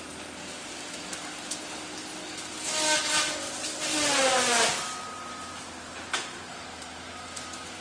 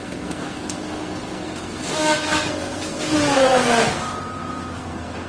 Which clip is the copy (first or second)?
second